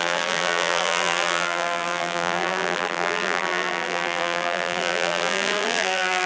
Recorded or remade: remade